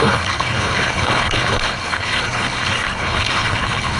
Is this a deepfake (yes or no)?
yes